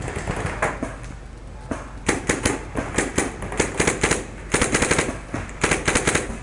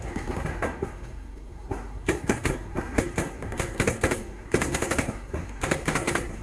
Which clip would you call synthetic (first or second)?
second